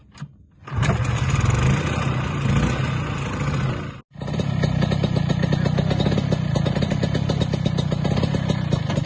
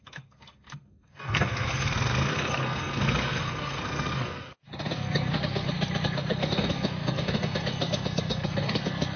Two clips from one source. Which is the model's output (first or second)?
second